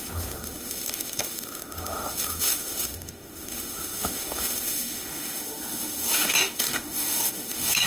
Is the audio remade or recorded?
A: remade